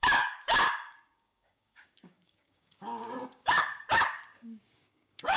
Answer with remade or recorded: remade